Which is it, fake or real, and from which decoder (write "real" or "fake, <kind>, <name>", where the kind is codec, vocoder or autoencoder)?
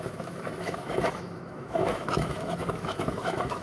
fake, autoencoder, DAC-VAE